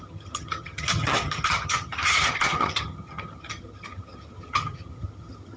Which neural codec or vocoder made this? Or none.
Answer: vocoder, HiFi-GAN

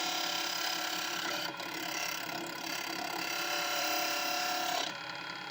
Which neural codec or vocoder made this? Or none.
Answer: vocoder, BigVGAN v2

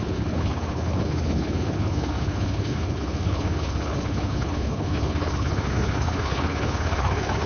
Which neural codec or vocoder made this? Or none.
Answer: codec, HILCodec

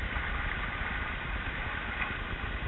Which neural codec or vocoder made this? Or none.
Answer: none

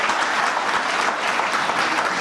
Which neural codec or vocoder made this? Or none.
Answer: none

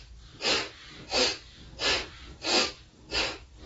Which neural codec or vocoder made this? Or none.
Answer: none